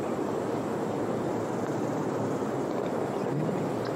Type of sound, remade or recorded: remade